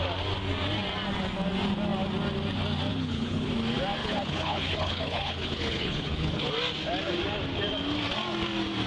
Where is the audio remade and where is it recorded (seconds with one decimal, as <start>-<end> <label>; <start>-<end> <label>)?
0.0-2.9 recorded; 2.9-3.5 remade; 3.5-4.0 recorded; 4.0-6.5 remade; 6.5-8.9 recorded